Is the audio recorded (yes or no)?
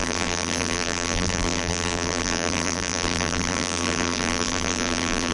no